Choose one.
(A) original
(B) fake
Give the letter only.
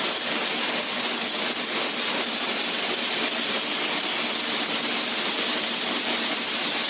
A